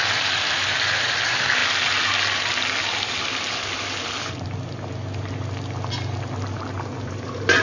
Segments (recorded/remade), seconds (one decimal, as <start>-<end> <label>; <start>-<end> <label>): 0.0-7.6 recorded